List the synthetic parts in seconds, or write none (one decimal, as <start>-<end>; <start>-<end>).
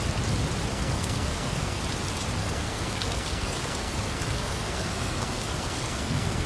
0.7-1.8; 2.4-6.5